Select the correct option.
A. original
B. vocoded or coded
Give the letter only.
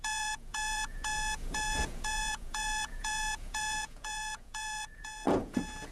B